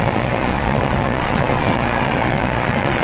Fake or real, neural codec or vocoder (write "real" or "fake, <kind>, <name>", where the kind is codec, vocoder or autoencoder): fake, vocoder, Vocos